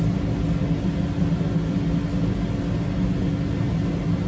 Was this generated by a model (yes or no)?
no